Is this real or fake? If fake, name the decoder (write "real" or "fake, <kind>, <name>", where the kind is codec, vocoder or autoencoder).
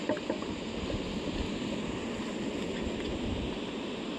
real